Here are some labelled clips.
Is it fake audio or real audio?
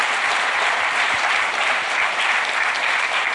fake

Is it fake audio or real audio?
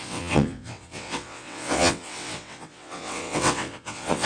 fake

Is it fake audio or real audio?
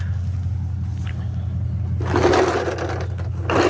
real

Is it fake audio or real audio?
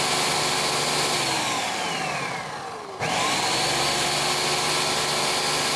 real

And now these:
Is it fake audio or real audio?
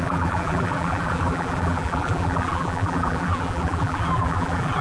fake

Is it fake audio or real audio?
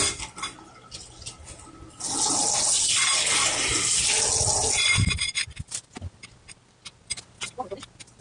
real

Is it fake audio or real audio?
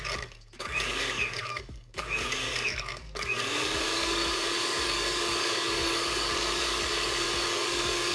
fake